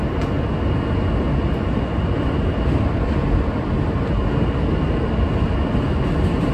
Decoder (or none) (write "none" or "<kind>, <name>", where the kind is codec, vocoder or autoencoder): none